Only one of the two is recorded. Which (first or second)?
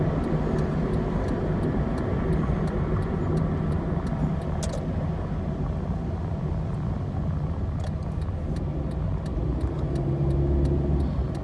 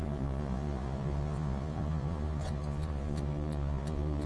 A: first